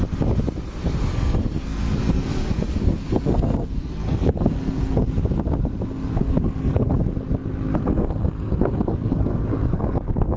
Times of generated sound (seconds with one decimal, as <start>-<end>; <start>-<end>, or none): 1.1-5.1; 6.1-7.0; 7.7-10.4